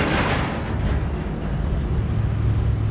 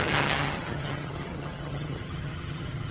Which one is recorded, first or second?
first